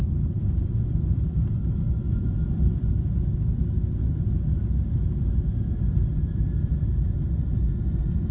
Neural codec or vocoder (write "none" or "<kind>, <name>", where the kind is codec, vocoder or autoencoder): none